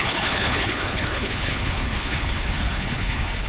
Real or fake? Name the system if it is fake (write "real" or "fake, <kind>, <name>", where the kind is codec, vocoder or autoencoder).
fake, codec, HILCodec